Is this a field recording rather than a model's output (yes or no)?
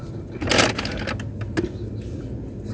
yes